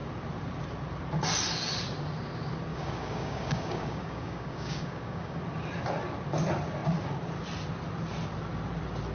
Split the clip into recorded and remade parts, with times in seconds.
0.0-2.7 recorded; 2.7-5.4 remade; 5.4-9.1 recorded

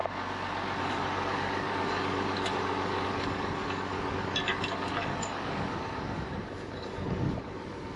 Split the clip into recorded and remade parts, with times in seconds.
0.0-0.8 recorded; 0.8-8.0 remade

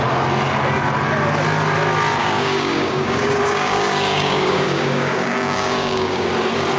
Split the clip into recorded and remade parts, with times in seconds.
0.0-2.2 recorded; 2.2-6.3 remade; 6.3-6.8 recorded

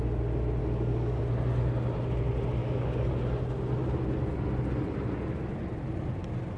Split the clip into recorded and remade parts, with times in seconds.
0.0-0.6 recorded; 0.6-1.2 remade; 1.2-2.6 recorded; 2.6-3.1 remade; 3.1-6.6 recorded